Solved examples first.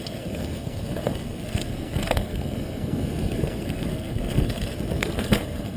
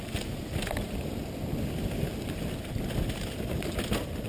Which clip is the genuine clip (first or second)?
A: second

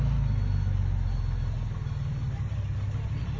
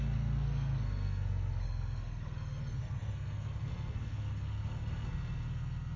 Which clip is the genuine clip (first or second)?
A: first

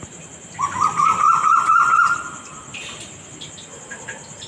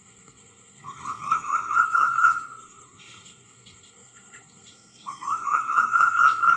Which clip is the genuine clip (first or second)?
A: first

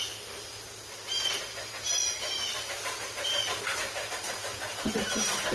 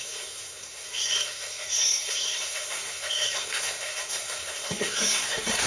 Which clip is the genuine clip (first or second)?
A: first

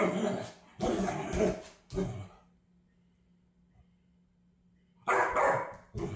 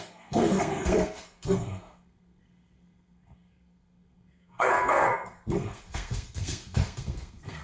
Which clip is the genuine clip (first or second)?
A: first